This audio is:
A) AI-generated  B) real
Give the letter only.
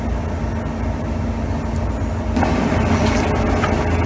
B